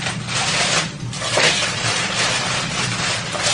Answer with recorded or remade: remade